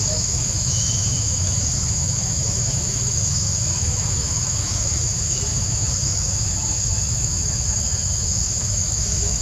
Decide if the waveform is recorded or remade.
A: remade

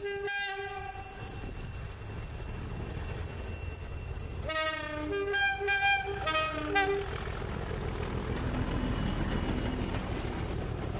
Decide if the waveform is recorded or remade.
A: recorded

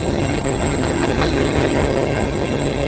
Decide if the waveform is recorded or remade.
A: remade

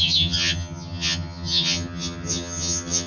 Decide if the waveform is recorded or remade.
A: remade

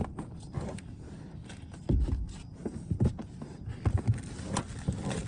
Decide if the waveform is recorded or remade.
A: recorded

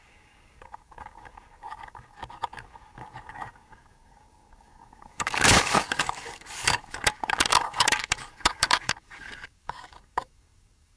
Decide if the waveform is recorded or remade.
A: remade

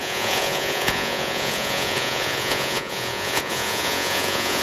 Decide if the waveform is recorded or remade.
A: remade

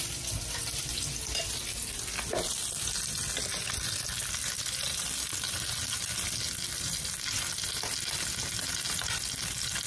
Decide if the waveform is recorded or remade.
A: recorded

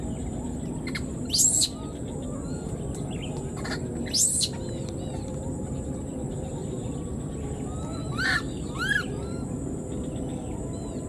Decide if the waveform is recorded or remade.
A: recorded